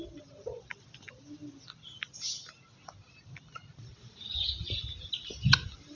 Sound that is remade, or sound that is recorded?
recorded